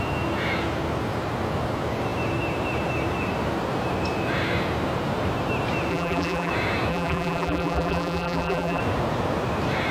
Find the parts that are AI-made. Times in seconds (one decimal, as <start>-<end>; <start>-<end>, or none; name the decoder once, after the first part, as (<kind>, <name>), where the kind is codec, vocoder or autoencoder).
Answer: 5.9-6.5 (vocoder, BigVGAN v2); 6.9-8.8

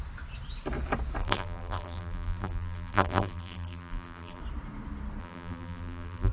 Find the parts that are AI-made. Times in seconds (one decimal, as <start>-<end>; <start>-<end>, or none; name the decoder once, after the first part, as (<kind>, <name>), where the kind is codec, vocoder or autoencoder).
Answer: 1.2-4.4 (vocoder, BigVGAN v2); 5.2-6.3

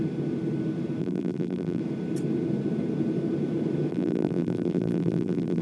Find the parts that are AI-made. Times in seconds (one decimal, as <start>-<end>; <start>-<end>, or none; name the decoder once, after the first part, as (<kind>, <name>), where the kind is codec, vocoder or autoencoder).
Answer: 1.0-1.8 (vocoder, BigVGAN v2); 3.9-5.6

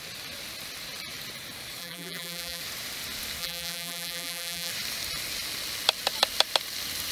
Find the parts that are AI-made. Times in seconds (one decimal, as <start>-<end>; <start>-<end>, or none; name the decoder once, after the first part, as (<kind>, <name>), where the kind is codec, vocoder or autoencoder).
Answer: 1.8-2.6 (vocoder, BigVGAN v2); 3.4-4.7

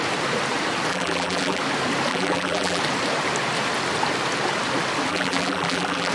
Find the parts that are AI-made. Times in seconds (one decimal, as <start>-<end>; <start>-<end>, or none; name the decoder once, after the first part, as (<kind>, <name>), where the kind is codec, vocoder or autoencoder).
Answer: 0.9-1.6 (vocoder, BigVGAN v2); 2.1-2.8; 5.1-6.1

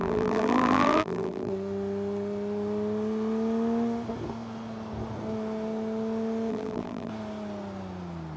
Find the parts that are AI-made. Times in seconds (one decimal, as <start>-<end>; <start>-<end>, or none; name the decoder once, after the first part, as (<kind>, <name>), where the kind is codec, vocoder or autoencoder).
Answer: 0.0-1.5 (vocoder, BigVGAN v2); 6.5-7.1